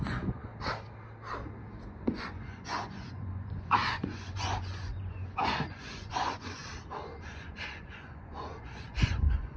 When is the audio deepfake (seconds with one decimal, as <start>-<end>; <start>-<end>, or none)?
0.0-0.5; 1.8-6.6; 7.2-9.6